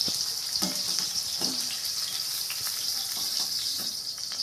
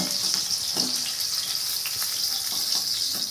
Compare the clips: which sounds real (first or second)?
second